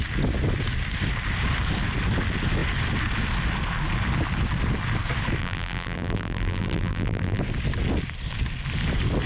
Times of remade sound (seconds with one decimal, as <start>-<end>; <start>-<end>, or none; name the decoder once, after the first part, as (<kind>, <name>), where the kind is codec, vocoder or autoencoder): 5.4-7.4 (vocoder, BigVGAN v2)